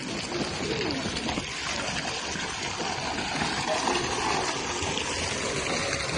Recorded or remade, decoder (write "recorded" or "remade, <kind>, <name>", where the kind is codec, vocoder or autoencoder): recorded